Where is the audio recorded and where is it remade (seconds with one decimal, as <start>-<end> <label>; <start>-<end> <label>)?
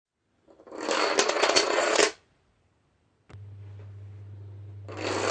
0.0-1.2 recorded; 1.2-2.0 remade; 2.0-5.3 recorded